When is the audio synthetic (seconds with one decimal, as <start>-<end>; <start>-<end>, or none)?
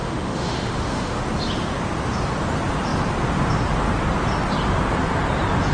0.0-1.2